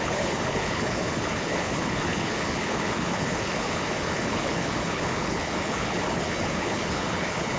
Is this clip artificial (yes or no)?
yes